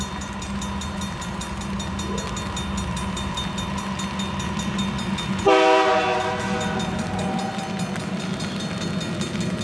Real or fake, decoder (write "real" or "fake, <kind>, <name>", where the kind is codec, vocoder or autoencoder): real